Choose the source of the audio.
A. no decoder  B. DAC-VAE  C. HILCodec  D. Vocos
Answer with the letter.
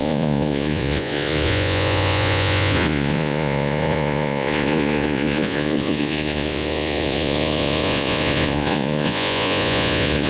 D